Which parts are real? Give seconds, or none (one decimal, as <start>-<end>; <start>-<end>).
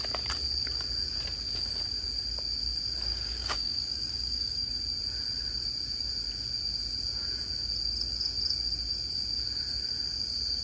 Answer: 0.0-3.1; 4.7-10.6